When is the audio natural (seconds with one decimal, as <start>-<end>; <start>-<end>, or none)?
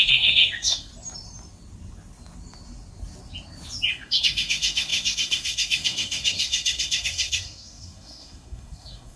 0.9-3.9